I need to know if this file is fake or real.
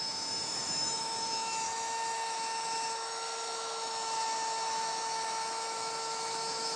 fake